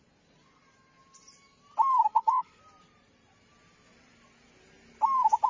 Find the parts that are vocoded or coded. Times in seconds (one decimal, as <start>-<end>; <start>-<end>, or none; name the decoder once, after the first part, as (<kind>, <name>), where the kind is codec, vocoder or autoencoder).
2.1-2.6 (codec, HILCodec)